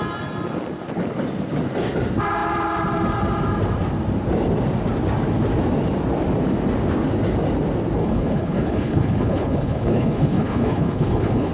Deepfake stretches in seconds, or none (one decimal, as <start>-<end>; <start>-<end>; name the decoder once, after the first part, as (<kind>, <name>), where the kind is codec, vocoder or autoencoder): 8.0-11.5 (codec, HILCodec)